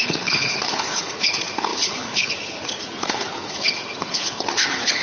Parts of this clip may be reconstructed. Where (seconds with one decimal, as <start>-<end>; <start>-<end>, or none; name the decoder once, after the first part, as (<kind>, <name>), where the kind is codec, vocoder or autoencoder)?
0.0-5.0 (codec, HILCodec)